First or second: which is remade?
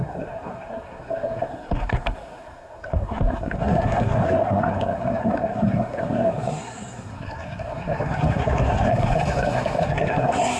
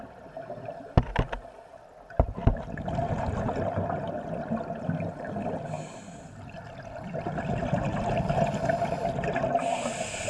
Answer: first